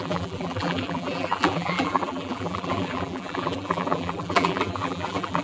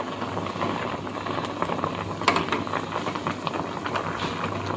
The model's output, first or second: first